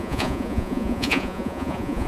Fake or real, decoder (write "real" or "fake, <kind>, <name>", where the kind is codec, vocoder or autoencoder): fake, vocoder, Vocos